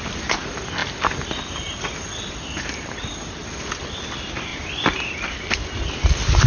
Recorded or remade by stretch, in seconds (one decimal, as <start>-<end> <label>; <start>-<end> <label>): 0.0-6.5 recorded